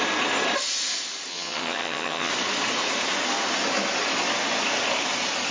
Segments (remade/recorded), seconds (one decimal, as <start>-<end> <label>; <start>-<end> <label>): 0.0-1.3 recorded; 1.3-2.3 remade; 2.3-5.5 recorded